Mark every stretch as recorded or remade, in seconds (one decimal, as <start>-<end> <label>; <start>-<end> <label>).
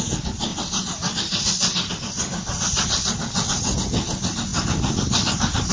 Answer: 0.0-5.7 recorded